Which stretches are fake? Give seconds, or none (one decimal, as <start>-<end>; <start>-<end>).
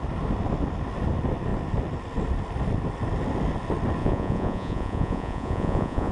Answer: 4.0-6.1